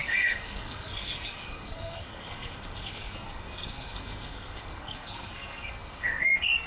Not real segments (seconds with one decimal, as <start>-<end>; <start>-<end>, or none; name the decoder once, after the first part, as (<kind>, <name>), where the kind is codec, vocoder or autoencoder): 0.0-6.7 (codec, SNAC)

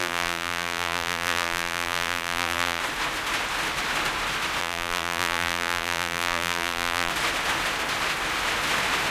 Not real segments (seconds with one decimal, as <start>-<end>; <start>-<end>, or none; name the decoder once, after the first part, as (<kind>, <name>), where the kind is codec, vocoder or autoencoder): 0.0-2.8 (vocoder, BigVGAN v2); 4.6-7.1

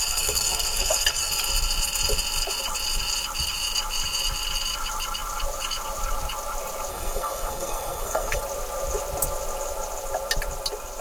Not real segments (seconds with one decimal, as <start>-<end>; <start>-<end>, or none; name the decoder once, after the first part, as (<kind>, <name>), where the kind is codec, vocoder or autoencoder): 0.0-1.3 (codec, SNAC); 6.9-8.4

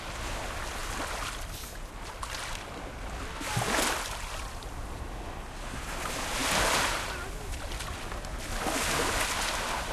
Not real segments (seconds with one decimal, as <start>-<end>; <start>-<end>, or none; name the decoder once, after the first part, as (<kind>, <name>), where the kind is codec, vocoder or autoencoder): none

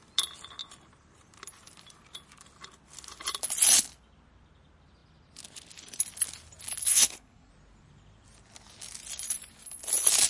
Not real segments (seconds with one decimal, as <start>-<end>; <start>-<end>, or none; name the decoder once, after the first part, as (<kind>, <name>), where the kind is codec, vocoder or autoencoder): 6.8-7.5 (codec, SNAC)